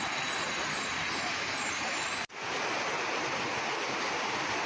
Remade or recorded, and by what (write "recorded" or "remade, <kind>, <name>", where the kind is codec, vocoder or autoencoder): recorded